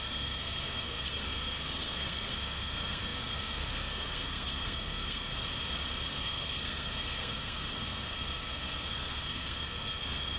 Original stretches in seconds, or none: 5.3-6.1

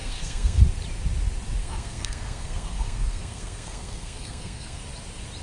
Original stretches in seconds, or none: 0.6-1.6; 4.8-5.4

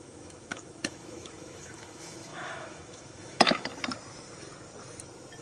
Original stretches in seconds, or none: 3.7-5.4